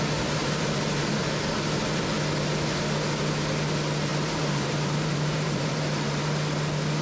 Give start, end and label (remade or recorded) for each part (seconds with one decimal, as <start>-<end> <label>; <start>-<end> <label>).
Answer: 0.0-0.4 recorded; 0.4-1.1 remade; 1.1-4.1 recorded; 4.1-6.2 remade; 6.2-7.0 recorded